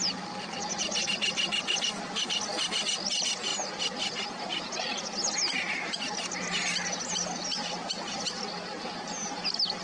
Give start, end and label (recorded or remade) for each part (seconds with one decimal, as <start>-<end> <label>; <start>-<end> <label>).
0.0-9.8 recorded